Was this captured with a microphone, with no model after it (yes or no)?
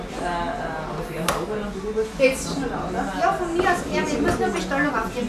yes